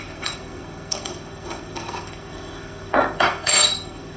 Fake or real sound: fake